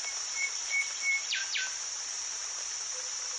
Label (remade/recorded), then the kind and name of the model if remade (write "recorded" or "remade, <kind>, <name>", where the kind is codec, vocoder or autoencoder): remade, vocoder, BigVGAN v2